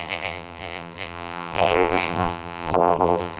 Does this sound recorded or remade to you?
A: remade